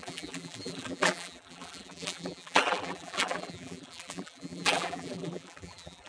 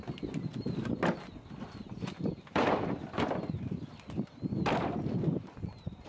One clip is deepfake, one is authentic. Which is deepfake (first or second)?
first